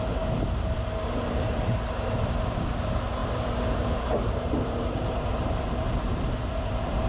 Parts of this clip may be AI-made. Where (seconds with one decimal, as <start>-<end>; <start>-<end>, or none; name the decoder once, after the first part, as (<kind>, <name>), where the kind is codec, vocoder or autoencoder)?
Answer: 0.0-7.1 (vocoder, BigVGAN v2)